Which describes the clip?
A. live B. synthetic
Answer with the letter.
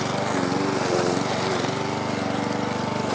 A